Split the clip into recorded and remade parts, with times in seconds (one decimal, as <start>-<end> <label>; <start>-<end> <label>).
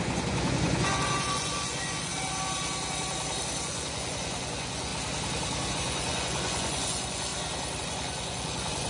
0.0-2.1 remade; 2.1-3.6 recorded; 3.6-4.9 remade; 4.9-5.7 recorded; 5.7-7.3 remade; 7.3-7.8 recorded; 7.8-8.9 remade